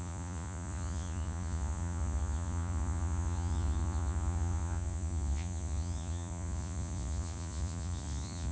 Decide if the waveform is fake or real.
fake